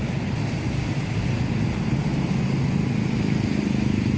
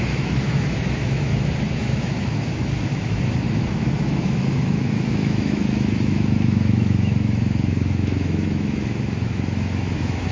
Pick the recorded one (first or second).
first